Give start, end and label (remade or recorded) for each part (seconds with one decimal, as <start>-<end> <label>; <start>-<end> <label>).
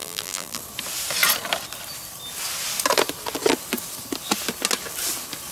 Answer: 0.0-0.6 remade; 0.6-5.5 recorded